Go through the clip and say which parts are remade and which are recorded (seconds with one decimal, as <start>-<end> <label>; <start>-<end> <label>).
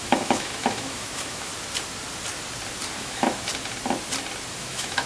0.0-1.5 remade; 1.5-3.0 recorded; 3.0-3.5 remade; 3.5-4.6 recorded; 4.6-5.1 remade